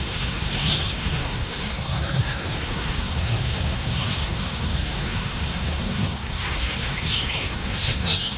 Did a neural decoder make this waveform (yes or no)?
yes